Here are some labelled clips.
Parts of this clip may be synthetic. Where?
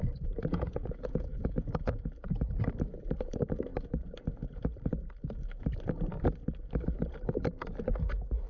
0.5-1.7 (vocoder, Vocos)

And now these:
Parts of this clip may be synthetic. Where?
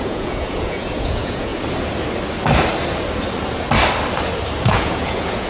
0.0-1.5 (vocoder, Vocos); 4.6-5.5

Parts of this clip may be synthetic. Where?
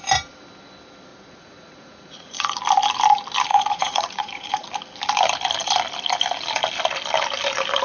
1.1-2.6 (vocoder, Vocos); 3.5-4.7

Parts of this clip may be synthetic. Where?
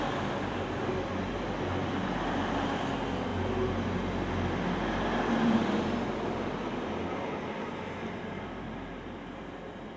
none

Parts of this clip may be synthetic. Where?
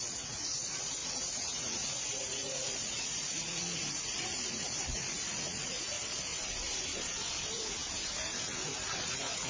0.0-6.3 (vocoder, Vocos); 8.9-9.5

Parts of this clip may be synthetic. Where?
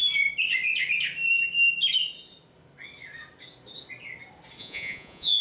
4.6-5.4 (vocoder, Vocos)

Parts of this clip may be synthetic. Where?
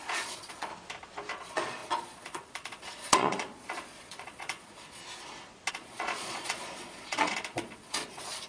0.0-0.7 (vocoder, Vocos); 1.3-5.0; 5.7-8.5